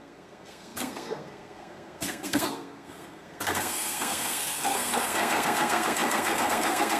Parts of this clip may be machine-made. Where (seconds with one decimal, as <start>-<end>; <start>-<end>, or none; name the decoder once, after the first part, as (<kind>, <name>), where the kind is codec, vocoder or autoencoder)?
0.0-7.0 (codec, SNAC)